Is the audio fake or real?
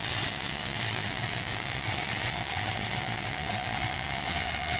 fake